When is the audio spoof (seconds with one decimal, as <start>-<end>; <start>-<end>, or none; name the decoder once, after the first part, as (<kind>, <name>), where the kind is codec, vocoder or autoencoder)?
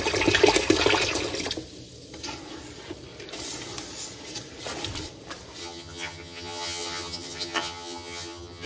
5.6-8.7 (vocoder, HiFi-GAN)